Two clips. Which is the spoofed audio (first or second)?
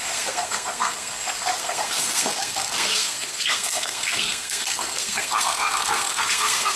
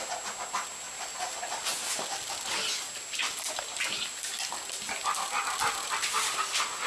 first